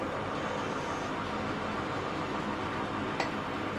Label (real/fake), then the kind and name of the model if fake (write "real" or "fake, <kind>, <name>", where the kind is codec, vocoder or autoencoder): real